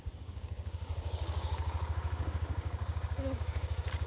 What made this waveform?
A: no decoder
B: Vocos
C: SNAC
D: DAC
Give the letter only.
D